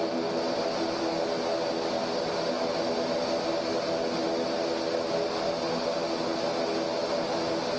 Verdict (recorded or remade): recorded